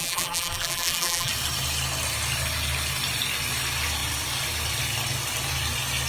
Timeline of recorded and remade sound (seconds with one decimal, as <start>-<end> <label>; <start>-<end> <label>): 0.0-1.3 remade; 1.3-6.1 recorded